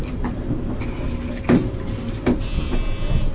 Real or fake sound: real